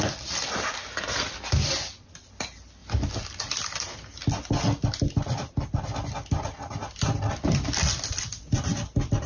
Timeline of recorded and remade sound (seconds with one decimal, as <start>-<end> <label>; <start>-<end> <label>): 0.0-9.3 recorded